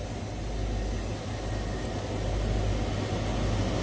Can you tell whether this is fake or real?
real